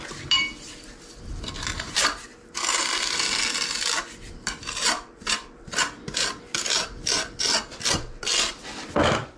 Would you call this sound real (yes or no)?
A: yes